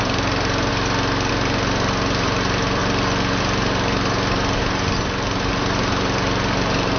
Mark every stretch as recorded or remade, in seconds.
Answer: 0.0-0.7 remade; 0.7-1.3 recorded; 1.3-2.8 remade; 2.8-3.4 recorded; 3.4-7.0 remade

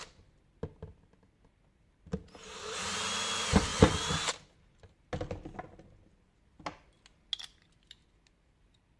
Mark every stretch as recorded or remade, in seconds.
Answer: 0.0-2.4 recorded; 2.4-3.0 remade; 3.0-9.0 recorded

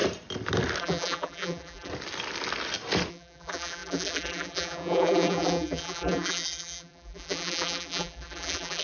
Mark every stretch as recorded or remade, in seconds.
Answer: 0.0-0.8 recorded; 0.8-1.9 remade; 1.9-3.1 recorded; 3.1-8.8 remade